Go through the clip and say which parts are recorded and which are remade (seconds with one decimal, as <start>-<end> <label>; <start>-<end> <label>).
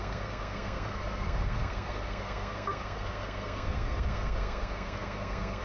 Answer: 0.0-5.6 remade